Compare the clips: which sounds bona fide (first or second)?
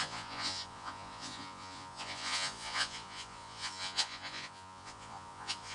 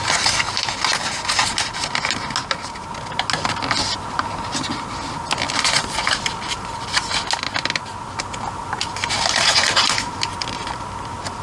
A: second